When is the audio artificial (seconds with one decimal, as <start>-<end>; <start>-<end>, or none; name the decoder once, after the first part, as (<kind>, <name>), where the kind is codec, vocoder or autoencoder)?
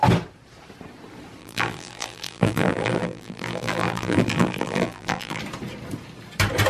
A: 1.4-5.4 (vocoder, BigVGAN v2)